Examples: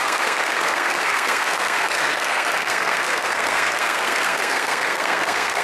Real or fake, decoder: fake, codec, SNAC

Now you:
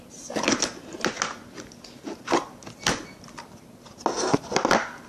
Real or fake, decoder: real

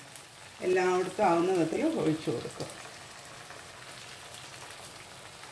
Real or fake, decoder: real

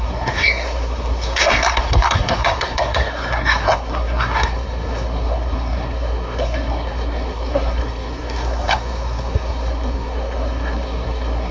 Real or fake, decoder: fake, codec, SNAC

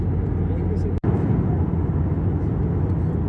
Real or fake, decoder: real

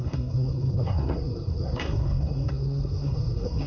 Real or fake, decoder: fake, codec, SNAC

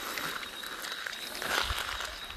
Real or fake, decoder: real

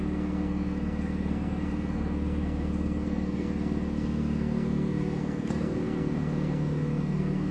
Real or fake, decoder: fake, codec, SNAC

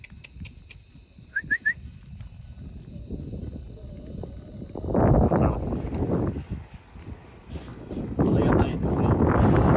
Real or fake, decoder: real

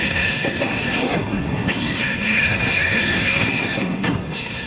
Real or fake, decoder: fake, codec, SNAC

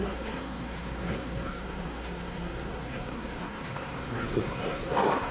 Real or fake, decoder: fake, codec, SNAC